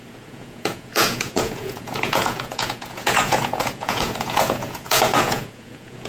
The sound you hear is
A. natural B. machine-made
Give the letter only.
B